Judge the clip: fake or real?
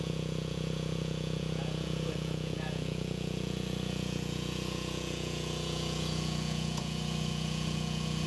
fake